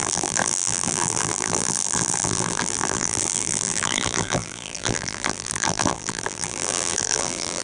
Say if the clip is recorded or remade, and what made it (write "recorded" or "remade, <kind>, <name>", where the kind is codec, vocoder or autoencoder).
remade, vocoder, BigVGAN v2